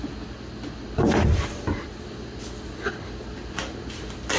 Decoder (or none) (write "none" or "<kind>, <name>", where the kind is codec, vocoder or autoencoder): none